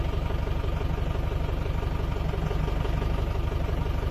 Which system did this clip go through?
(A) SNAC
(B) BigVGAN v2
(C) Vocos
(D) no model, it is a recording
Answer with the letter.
D